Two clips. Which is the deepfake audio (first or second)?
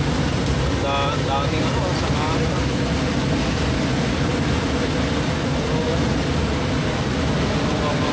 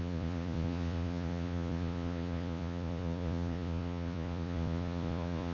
second